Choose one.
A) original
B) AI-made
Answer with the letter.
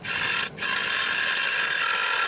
A